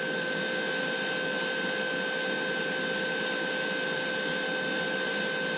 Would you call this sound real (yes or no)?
yes